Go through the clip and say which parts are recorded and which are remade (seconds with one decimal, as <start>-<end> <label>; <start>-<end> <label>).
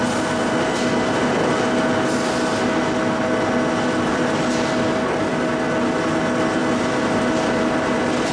0.0-8.3 recorded